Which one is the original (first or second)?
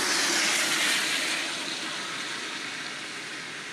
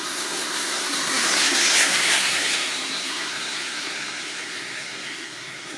first